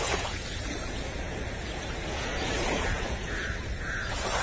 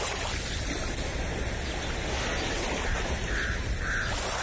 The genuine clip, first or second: second